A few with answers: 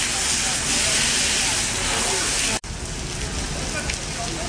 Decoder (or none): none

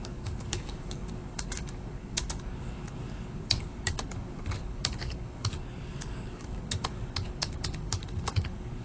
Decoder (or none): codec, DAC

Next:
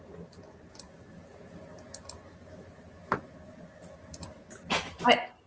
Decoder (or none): none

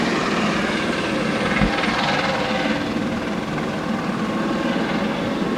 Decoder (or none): none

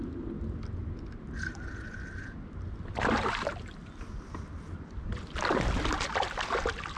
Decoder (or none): none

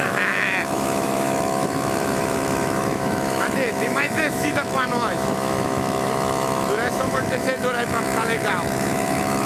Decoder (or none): autoencoder, DAC-VAE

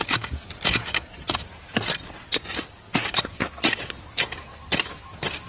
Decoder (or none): none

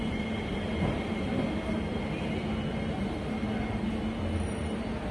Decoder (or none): none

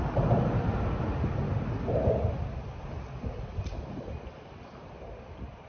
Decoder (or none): none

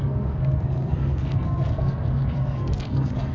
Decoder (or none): codec, SNAC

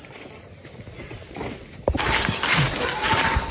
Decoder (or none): none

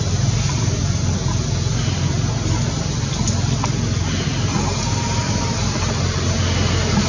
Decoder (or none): none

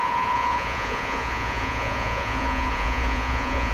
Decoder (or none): vocoder, Vocos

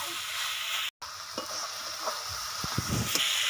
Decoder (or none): none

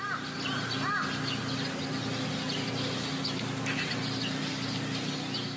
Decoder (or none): none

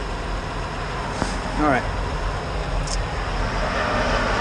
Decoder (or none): none